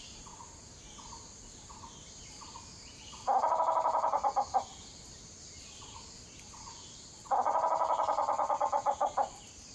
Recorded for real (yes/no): no